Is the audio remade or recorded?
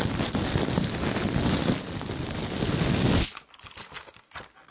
recorded